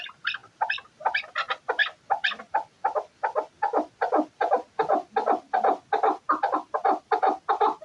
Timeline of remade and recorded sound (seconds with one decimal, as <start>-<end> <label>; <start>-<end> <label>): 0.0-7.8 recorded